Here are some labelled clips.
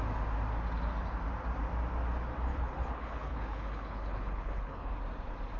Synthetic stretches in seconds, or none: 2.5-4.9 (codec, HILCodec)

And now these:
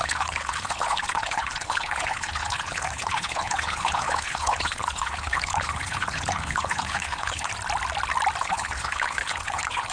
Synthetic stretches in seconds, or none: 0.0-7.5 (codec, HILCodec); 8.4-9.9